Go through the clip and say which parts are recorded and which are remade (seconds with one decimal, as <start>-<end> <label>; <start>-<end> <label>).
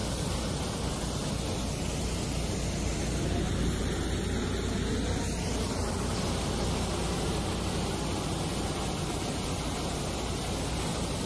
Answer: 0.0-11.3 recorded